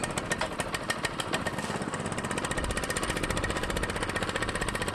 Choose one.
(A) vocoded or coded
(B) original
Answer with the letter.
B